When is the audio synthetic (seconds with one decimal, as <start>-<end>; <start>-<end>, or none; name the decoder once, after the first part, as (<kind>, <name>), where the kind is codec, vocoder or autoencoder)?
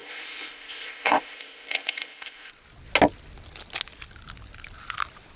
0.0-2.5 (codec, ZipCodec)